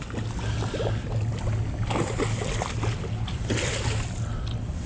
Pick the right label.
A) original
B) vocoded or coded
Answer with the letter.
A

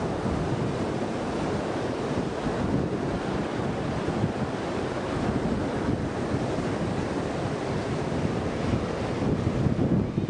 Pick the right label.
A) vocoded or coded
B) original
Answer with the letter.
B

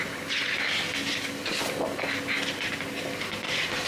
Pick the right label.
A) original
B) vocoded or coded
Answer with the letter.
A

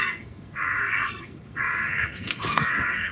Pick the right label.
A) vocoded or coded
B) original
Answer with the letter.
A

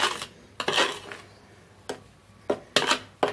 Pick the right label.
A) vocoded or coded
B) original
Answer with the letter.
B